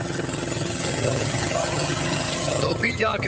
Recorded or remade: remade